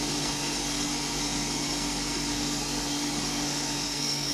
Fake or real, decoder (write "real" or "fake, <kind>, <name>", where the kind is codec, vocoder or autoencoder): fake, codec, SNAC